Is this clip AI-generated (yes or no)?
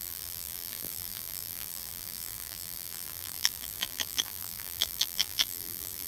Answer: yes